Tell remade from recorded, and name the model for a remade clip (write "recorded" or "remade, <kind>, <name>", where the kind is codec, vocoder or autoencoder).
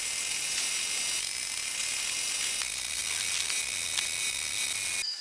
recorded